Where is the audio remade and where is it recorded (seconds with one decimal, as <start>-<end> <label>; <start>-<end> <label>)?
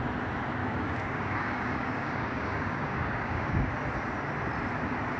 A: 0.0-0.6 recorded; 0.6-3.7 remade; 3.7-5.2 recorded